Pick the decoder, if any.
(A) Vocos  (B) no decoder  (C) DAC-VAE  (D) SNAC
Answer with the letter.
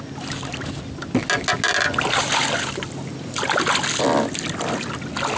B